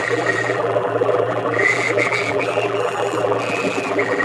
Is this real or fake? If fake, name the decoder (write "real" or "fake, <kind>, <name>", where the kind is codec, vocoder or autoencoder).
fake, vocoder, BigVGAN v2